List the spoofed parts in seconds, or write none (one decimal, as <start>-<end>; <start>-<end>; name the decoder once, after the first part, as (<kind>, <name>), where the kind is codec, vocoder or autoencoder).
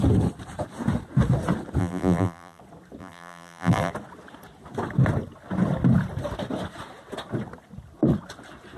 1.8-2.6 (vocoder, BigVGAN v2); 3.0-3.9